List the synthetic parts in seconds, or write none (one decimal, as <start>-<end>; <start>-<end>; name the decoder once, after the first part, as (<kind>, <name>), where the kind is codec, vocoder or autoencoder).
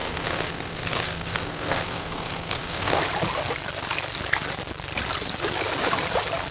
0.0-3.0 (codec, SNAC)